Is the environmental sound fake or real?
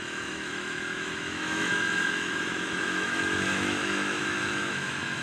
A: fake